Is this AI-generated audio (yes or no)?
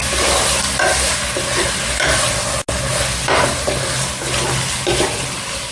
no